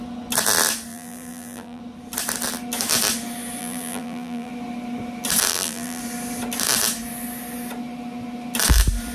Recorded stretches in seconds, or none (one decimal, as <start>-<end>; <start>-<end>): 0.0-0.9; 1.8-3.6; 4.5-5.5; 6.0-9.1